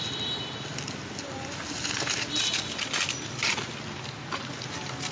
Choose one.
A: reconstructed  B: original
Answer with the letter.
B